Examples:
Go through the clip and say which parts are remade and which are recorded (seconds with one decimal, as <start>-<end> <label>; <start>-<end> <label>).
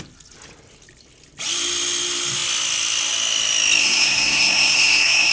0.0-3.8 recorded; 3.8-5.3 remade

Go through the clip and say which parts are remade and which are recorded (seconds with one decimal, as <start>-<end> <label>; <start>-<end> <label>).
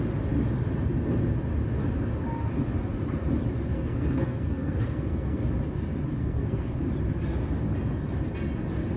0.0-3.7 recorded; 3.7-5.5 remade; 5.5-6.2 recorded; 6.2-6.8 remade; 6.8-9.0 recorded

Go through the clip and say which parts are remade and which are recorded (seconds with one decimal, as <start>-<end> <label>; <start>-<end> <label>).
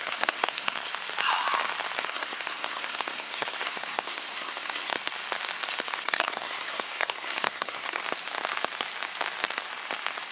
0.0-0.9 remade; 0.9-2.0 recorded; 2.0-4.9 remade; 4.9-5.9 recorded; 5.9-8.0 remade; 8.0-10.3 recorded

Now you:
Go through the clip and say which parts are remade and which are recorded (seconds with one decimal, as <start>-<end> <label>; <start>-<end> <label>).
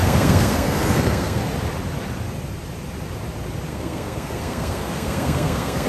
0.0-1.4 remade; 1.4-3.7 recorded; 3.7-5.9 remade